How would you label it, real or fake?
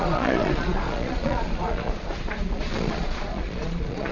fake